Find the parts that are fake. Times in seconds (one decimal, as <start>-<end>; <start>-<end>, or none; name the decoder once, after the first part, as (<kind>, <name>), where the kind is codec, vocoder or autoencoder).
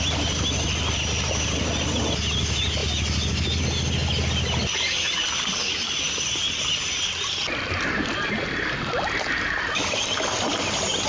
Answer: none